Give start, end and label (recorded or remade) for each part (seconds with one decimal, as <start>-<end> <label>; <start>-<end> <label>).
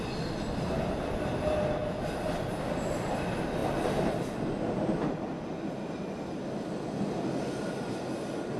0.0-8.6 recorded